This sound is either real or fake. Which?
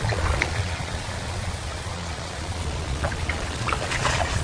fake